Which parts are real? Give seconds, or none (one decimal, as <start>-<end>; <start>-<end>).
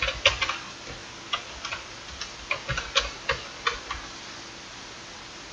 0.0-5.5